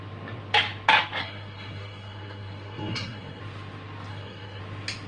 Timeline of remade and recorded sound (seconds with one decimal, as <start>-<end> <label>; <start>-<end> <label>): 0.0-1.2 recorded; 1.2-3.4 remade; 3.4-4.1 recorded; 4.1-4.6 remade; 4.6-5.1 recorded

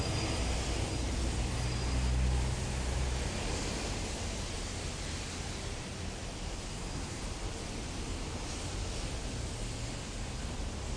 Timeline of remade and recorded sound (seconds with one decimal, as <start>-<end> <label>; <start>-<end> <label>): 0.0-6.7 recorded; 6.7-7.2 remade; 7.2-11.0 recorded